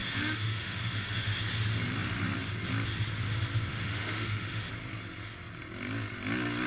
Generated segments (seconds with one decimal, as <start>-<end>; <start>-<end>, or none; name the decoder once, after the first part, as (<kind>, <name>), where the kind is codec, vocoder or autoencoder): 0.0-1.4 (autoencoder, DAC-VAE); 3.7-4.7